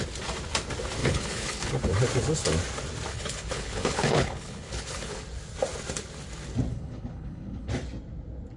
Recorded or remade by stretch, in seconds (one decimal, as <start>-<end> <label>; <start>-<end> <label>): 0.0-1.0 recorded; 1.0-1.7 remade; 1.7-3.1 recorded; 3.1-5.2 remade; 5.2-6.7 recorded; 6.7-7.7 remade; 7.7-8.6 recorded